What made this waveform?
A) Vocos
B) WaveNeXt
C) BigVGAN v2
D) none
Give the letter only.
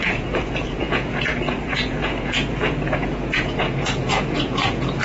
A